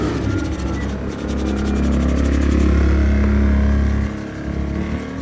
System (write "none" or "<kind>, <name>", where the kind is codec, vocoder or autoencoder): none